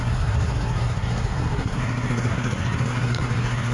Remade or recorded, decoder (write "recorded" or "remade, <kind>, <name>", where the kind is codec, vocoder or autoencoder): remade, codec, SNAC